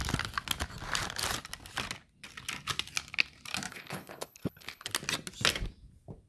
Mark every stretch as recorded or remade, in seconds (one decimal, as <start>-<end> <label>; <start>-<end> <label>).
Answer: 0.0-3.7 recorded; 3.7-4.9 remade; 4.9-6.3 recorded